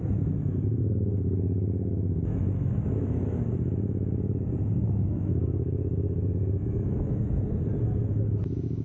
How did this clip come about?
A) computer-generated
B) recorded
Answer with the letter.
A